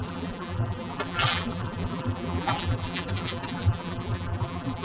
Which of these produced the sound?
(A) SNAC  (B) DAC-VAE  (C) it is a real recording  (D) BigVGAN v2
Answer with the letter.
D